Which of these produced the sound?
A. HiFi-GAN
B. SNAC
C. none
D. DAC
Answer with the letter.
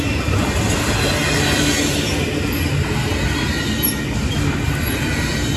C